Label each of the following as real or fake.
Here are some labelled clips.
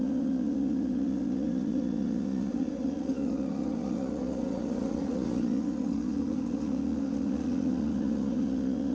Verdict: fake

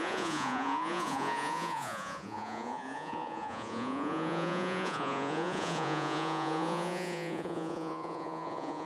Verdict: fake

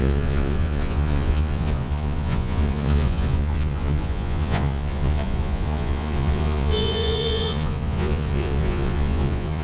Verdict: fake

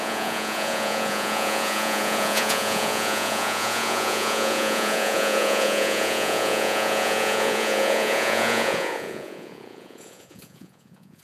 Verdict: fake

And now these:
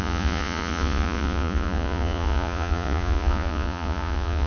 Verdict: fake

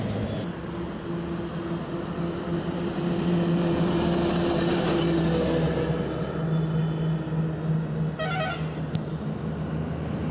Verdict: real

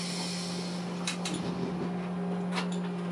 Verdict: real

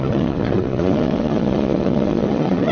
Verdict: fake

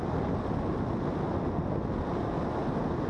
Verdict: real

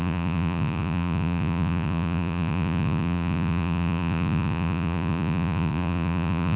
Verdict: fake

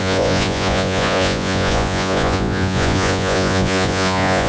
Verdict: fake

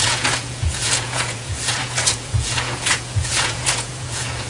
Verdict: fake